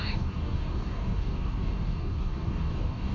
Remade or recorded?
remade